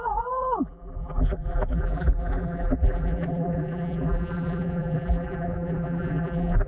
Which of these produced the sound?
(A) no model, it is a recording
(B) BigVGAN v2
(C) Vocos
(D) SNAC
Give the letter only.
B